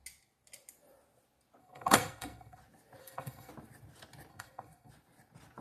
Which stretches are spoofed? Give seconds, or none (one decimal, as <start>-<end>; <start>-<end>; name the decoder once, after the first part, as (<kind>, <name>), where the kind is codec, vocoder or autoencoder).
1.6-2.6 (codec, SNAC); 3.0-3.5; 4.3-4.9